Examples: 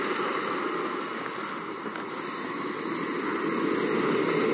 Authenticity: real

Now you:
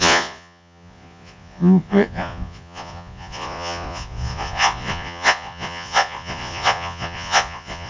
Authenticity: fake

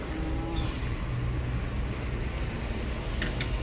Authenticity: real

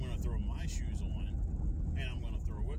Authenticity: real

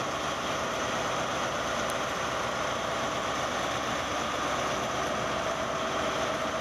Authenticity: real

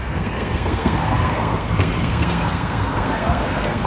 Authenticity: fake